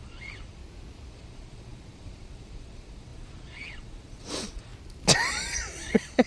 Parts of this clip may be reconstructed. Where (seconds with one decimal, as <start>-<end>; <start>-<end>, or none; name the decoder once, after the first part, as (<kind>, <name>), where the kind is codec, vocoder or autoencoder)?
0.0-0.6 (vocoder, Vocos); 1.1-4.7; 5.3-6.3